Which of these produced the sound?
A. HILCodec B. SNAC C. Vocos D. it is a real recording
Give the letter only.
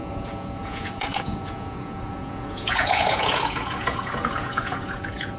C